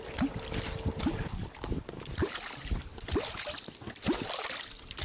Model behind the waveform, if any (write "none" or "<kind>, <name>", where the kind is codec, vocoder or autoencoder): none